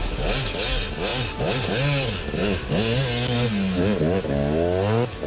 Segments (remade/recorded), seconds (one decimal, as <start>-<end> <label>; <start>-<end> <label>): 0.0-5.3 recorded